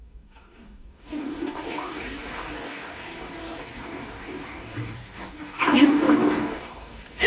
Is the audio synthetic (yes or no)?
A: yes